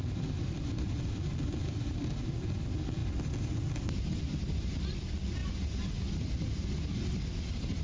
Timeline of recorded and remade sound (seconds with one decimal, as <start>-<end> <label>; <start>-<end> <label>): 0.0-3.0 remade; 3.0-4.2 recorded; 4.2-5.4 remade; 5.4-7.8 recorded